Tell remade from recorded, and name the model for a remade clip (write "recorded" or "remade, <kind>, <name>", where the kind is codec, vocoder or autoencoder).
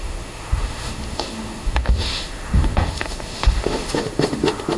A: remade, autoencoder, DAC-VAE